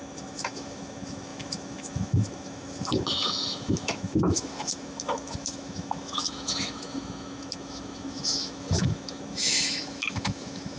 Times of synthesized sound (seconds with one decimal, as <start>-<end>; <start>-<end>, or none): 0.0-10.8